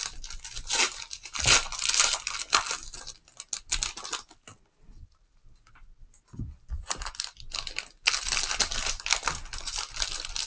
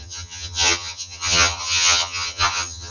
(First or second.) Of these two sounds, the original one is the first